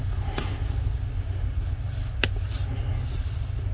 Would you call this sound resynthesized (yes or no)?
no